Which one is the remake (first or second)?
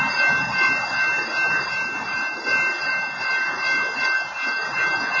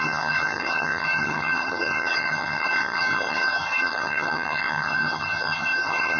second